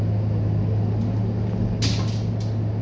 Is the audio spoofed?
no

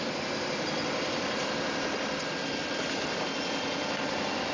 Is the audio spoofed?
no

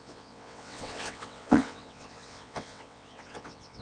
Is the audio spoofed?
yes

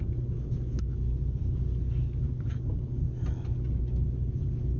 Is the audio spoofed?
no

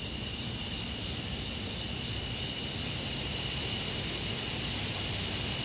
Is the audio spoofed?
no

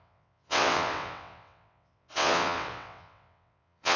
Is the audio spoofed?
yes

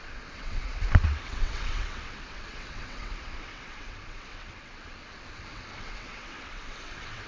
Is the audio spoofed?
yes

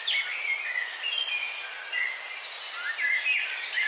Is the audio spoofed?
no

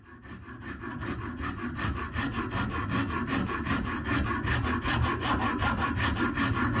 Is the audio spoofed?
no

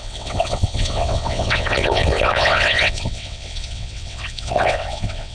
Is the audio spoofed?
yes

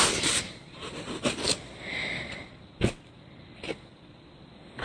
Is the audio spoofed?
no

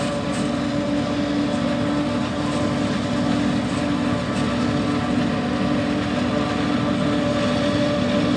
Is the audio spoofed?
no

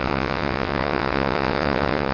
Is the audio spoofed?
yes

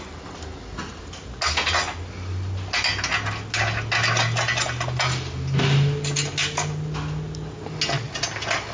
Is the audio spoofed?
no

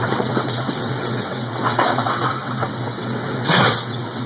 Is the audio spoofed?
yes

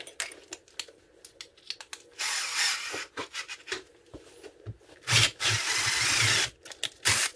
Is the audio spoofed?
no